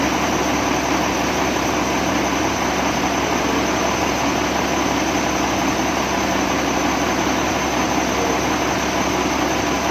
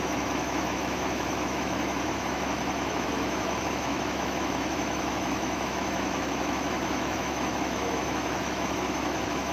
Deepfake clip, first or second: second